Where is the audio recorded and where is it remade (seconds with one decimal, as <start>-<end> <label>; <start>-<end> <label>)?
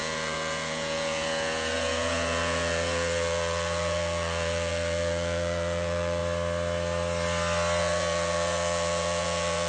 0.0-6.2 remade; 6.2-7.8 recorded; 7.8-9.7 remade